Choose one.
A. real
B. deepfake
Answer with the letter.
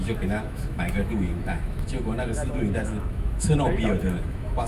B